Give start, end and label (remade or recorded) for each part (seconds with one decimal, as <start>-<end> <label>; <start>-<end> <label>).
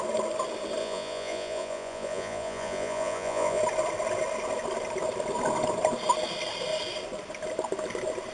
0.0-0.8 recorded; 0.8-3.6 remade; 3.6-8.3 recorded